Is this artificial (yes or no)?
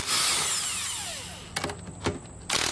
no